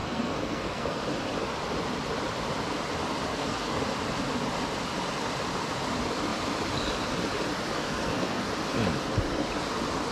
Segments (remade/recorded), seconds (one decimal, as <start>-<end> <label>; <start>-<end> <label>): 0.0-1.0 remade; 1.0-3.3 recorded; 3.3-3.8 remade; 3.8-7.8 recorded; 7.8-8.5 remade; 8.5-10.1 recorded